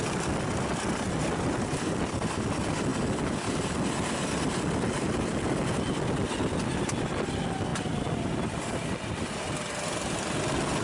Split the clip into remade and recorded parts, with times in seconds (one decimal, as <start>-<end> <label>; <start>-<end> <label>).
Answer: 0.0-7.7 recorded; 7.7-9.3 remade; 9.3-10.8 recorded